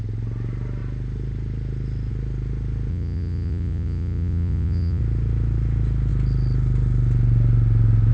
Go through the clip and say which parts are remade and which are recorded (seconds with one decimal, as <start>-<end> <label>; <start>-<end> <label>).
0.0-2.9 recorded; 2.9-5.0 remade; 5.0-8.1 recorded